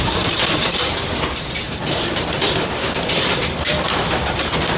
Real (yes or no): no